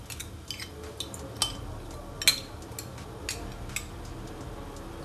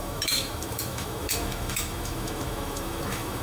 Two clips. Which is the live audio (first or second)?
first